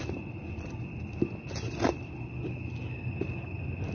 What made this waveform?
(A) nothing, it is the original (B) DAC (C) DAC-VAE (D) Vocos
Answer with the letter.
A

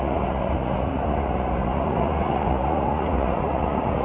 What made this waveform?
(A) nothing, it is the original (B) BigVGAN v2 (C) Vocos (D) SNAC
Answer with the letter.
C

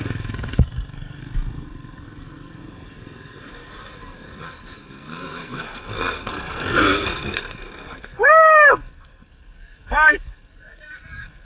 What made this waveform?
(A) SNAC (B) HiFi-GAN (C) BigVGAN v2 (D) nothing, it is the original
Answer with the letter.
A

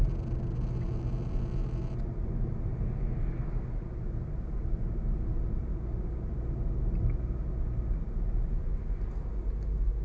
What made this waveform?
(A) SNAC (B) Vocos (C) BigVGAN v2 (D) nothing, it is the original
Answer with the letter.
D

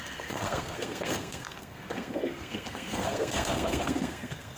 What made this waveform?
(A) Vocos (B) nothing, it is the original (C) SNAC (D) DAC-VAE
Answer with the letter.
C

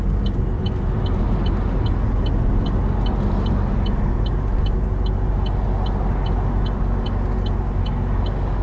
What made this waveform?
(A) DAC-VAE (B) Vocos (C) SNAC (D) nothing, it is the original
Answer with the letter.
D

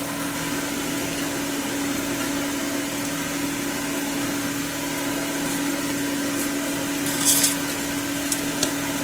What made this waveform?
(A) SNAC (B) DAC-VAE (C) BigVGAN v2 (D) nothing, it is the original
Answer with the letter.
D